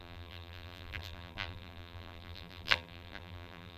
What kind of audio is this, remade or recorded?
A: remade